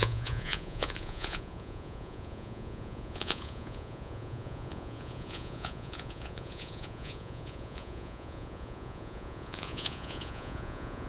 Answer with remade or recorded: remade